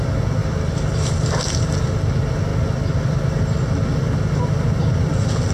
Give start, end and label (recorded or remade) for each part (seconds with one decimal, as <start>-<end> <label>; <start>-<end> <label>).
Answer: 0.0-5.5 recorded